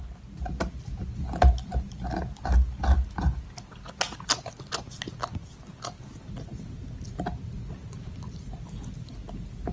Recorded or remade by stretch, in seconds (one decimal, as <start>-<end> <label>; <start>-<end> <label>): 0.0-9.7 recorded